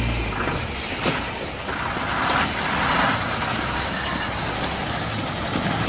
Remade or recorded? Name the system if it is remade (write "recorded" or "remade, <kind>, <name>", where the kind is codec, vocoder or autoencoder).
recorded